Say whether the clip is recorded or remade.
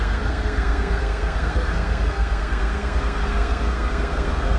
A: remade